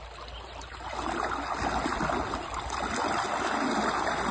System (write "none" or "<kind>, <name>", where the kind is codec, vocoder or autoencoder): none